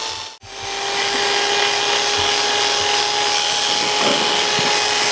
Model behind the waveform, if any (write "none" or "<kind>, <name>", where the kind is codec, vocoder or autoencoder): none